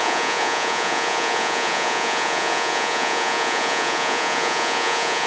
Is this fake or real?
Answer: fake